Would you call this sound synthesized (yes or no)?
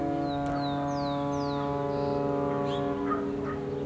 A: no